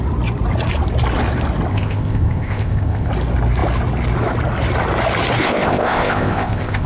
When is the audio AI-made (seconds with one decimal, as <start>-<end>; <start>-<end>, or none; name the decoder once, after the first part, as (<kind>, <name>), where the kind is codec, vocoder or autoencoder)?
1.7-3.1 (codec, ZipCodec); 5.4-6.9